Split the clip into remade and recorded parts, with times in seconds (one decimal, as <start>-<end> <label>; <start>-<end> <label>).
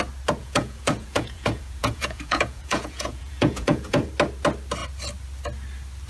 0.0-0.4 recorded; 0.4-4.1 remade; 4.1-6.1 recorded